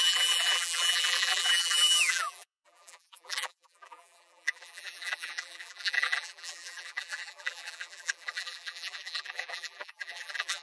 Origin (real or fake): fake